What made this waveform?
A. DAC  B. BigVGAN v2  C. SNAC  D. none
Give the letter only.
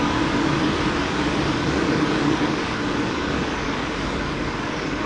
A